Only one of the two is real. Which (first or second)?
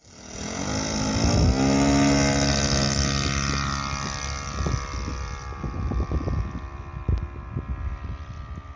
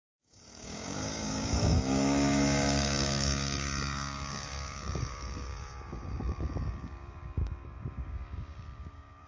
first